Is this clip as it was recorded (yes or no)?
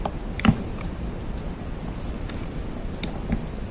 yes